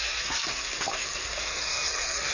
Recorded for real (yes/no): no